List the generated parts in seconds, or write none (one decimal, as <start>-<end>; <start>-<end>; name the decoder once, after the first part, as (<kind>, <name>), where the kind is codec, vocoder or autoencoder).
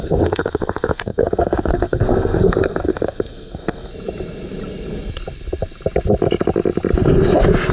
0.0-3.9 (codec, SNAC)